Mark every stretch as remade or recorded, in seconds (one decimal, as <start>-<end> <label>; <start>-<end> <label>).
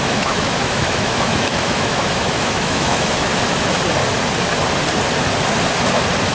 0.0-3.3 remade; 3.3-6.3 recorded